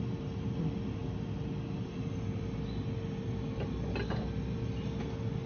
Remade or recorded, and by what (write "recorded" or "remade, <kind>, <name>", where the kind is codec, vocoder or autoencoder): recorded